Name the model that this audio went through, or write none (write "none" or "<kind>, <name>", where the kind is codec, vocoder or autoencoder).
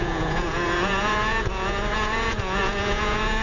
vocoder, Vocos